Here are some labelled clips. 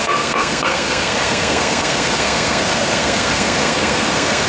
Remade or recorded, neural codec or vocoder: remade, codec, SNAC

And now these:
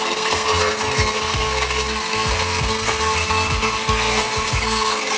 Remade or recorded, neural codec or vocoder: remade, codec, SNAC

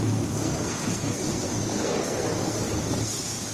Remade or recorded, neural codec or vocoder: remade, codec, SNAC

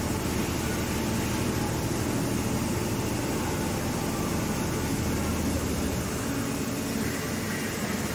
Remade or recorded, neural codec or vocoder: recorded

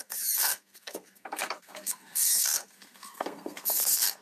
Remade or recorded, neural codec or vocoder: remade, codec, SNAC